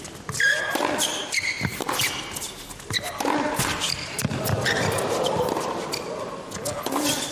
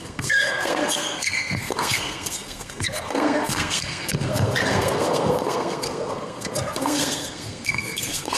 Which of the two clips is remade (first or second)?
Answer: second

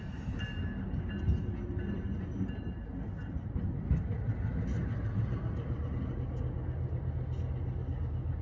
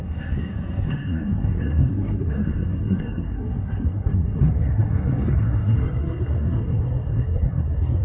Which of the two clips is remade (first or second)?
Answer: second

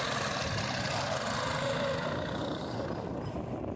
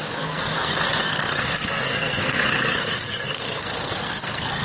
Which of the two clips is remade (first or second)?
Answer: second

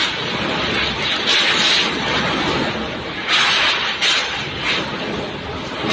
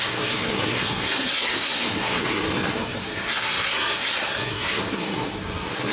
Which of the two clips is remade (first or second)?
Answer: second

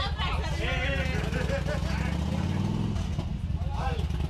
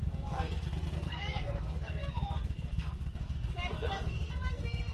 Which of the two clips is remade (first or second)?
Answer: second